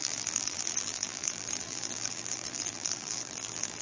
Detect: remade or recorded remade